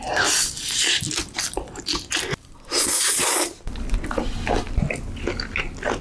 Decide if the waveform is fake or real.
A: real